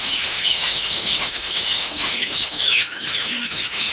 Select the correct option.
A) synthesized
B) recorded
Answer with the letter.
A